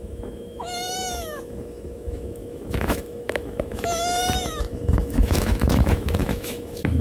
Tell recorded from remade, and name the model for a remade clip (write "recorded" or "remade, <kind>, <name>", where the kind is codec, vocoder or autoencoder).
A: remade, autoencoder, DAC-VAE